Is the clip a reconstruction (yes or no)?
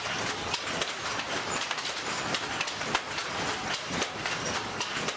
no